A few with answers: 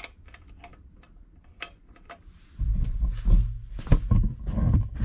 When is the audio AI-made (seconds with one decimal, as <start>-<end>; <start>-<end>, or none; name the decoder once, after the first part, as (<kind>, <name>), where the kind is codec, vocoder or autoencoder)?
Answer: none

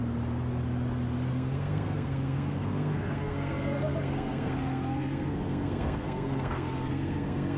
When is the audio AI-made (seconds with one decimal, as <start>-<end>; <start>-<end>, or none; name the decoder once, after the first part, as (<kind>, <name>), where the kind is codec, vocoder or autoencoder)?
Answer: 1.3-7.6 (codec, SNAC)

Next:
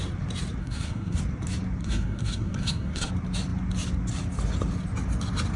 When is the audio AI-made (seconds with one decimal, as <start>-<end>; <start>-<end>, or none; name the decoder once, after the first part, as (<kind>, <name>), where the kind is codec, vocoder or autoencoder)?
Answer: 0.6-1.2 (codec, SNAC); 1.8-3.1